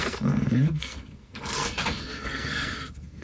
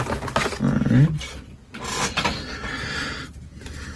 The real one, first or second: second